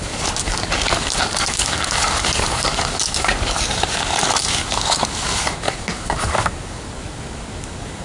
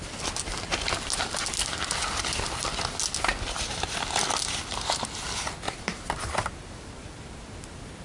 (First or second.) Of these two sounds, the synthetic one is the first